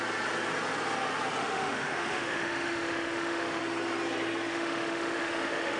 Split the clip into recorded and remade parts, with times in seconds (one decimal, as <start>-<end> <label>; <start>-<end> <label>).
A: 0.0-1.4 recorded; 1.4-3.6 remade; 3.6-4.5 recorded; 4.5-5.8 remade